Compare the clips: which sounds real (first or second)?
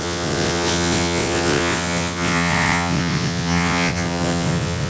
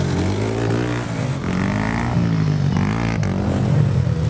second